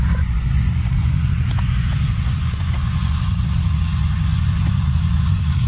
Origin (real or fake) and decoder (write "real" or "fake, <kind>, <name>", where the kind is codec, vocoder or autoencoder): fake, vocoder, Vocos